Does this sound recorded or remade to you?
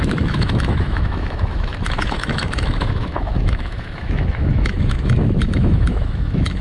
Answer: remade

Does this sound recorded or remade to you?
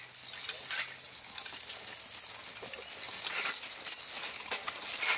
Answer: recorded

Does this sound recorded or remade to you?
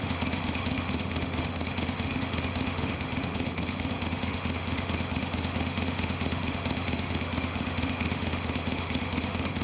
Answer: remade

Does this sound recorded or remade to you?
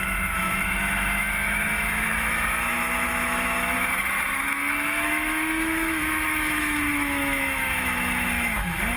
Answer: remade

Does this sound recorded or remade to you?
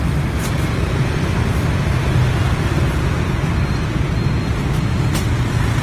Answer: recorded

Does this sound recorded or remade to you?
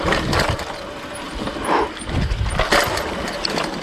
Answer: recorded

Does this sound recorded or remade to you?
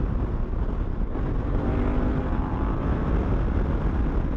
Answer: recorded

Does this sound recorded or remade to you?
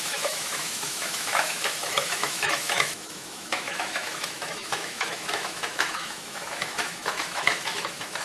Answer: remade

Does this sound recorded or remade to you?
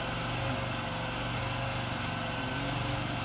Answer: recorded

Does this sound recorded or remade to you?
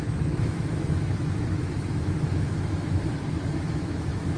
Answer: remade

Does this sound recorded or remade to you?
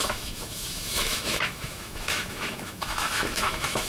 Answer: remade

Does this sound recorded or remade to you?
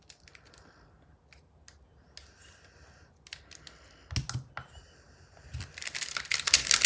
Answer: recorded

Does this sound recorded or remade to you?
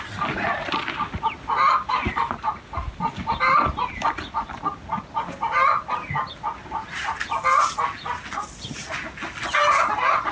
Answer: recorded